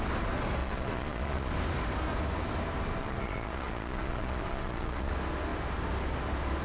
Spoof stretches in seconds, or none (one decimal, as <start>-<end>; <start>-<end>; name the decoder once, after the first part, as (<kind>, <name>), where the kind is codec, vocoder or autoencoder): 0.6-1.5 (vocoder, Vocos); 3.0-5.1